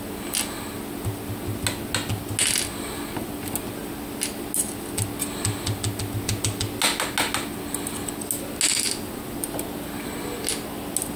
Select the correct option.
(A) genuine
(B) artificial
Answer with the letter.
A